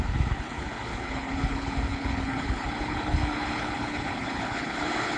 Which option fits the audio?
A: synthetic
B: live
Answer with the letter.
A